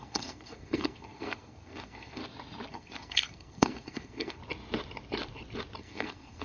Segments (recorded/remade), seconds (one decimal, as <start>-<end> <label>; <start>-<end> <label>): 0.0-2.2 remade; 2.2-2.7 recorded; 2.7-4.4 remade; 4.4-5.8 recorded; 5.8-6.4 remade